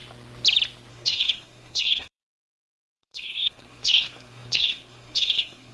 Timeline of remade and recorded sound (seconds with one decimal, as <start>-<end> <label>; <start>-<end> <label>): 0.0-0.9 recorded; 0.9-5.7 remade